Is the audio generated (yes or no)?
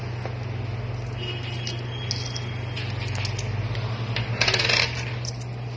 no